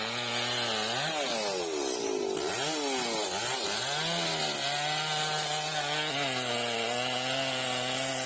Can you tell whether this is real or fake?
real